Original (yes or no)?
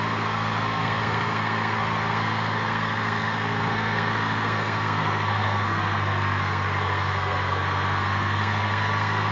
no